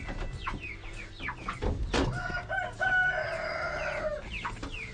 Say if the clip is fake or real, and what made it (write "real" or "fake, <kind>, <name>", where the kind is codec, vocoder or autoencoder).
real